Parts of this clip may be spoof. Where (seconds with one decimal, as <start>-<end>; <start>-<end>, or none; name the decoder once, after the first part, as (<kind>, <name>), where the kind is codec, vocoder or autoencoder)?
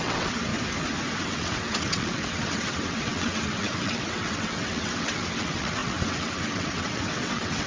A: 0.0-0.5 (vocoder, WaveNeXt); 1.2-7.7